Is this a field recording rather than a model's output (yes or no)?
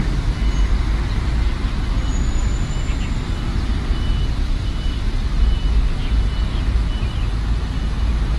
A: yes